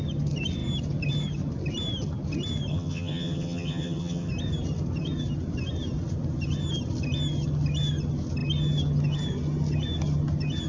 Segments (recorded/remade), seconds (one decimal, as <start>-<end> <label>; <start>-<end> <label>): 0.0-2.7 recorded; 2.7-4.3 remade; 4.3-10.7 recorded